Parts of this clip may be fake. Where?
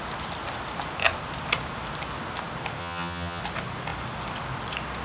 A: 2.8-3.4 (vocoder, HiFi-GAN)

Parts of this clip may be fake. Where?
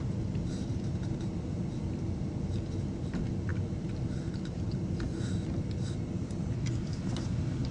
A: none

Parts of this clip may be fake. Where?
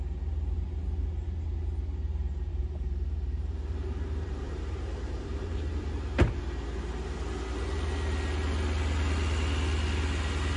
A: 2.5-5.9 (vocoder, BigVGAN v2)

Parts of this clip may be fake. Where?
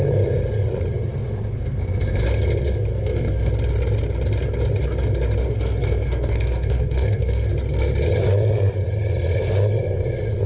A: 2.9-3.5 (codec, SNAC); 5.4-7.5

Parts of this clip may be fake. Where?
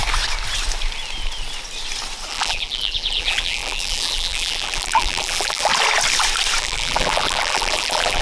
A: 2.3-5.7 (vocoder, BigVGAN v2); 6.6-8.2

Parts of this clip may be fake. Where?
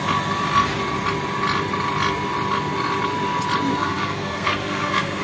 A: 3.7-5.2 (codec, SNAC)